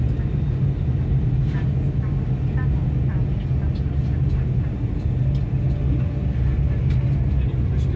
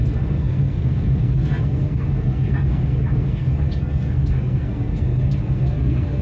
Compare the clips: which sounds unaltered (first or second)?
first